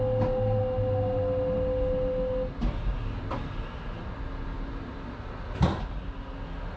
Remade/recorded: recorded